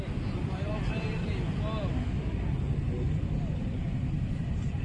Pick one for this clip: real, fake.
real